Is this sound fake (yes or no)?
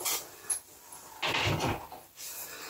no